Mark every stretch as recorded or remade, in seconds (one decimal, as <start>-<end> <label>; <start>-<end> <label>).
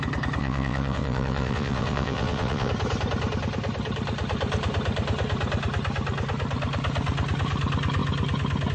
0.0-0.4 recorded; 0.4-2.7 remade; 2.7-8.7 recorded